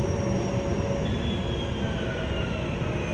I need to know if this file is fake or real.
real